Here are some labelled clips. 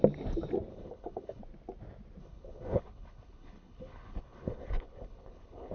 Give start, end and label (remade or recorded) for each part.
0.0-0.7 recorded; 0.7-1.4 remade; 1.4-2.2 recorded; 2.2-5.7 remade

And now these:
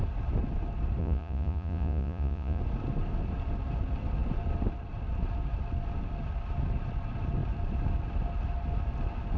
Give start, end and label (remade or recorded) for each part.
0.0-1.0 recorded; 1.0-2.6 remade; 2.6-9.4 recorded

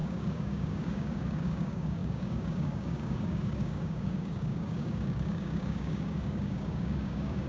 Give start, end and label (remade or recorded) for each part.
0.0-7.5 remade